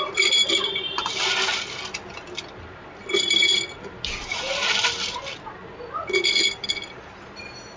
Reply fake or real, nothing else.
real